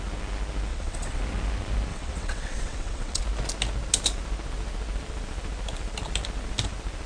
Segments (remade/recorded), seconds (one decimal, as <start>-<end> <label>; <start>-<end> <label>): 0.0-0.7 recorded; 0.7-1.2 remade; 1.2-1.9 recorded; 1.9-3.2 remade; 3.2-7.1 recorded